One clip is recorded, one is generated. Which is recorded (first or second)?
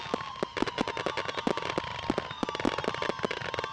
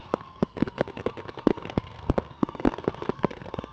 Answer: first